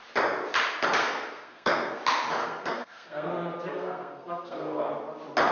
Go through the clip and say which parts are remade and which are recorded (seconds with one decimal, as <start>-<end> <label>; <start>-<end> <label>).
0.0-1.0 recorded; 1.0-2.0 remade; 2.0-2.4 recorded; 2.4-3.3 remade; 3.3-3.7 recorded; 3.7-4.9 remade; 4.9-5.5 recorded